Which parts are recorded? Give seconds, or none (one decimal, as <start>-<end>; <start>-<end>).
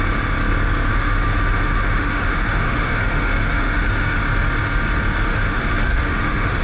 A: 0.0-0.9; 4.2-5.3